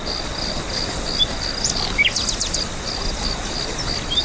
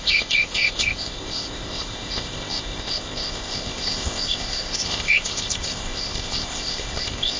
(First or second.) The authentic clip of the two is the first